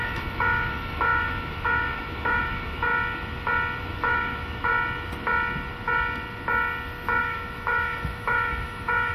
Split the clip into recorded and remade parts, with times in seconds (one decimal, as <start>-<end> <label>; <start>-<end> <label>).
0.0-2.9 remade; 2.9-3.8 recorded; 3.8-4.7 remade; 4.7-7.2 recorded; 7.2-9.1 remade